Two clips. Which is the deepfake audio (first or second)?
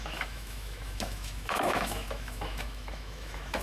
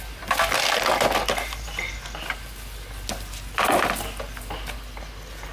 first